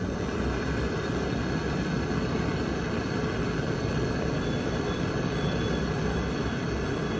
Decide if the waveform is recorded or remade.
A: recorded